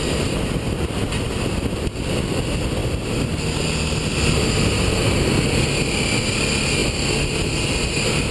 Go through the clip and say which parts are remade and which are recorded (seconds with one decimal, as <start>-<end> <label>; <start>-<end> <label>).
0.0-8.3 recorded

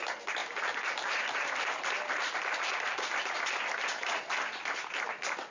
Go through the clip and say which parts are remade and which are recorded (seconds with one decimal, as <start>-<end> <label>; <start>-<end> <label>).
0.0-0.4 recorded; 0.4-3.4 remade; 3.4-5.5 recorded

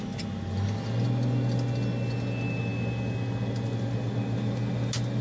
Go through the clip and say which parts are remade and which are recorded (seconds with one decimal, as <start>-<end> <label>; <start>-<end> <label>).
0.0-5.2 recorded

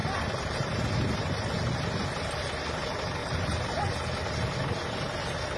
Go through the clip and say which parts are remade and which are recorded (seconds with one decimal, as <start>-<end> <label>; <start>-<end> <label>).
0.0-0.8 remade; 0.8-3.2 recorded; 3.2-3.8 remade; 3.8-5.6 recorded

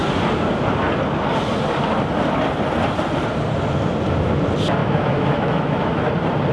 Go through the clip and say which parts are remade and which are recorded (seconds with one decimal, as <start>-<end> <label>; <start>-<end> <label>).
0.0-4.8 recorded; 4.8-6.1 remade; 6.1-6.5 recorded

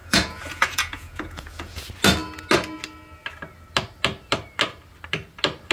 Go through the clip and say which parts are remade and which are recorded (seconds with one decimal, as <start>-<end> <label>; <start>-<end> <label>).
0.0-1.8 remade; 1.8-5.7 recorded

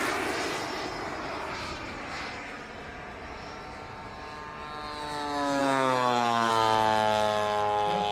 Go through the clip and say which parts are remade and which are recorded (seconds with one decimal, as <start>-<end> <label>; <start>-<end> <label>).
0.0-5.6 recorded; 5.6-6.5 remade; 6.5-8.1 recorded

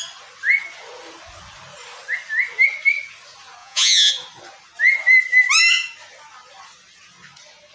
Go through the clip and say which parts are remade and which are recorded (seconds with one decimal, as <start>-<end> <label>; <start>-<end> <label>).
0.0-3.6 recorded; 3.6-4.1 remade; 4.1-7.7 recorded